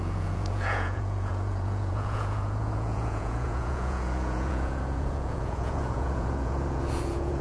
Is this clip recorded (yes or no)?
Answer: no